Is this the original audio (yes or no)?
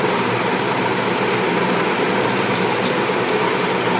yes